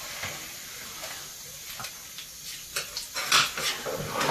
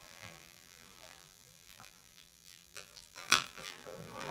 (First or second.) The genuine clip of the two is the first